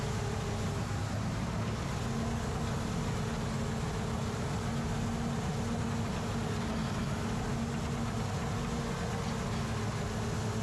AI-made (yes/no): no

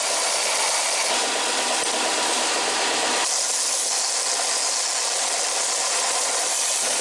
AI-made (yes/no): no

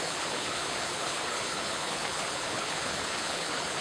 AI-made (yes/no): yes